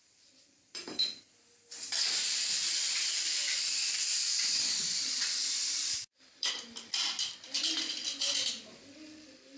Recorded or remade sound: remade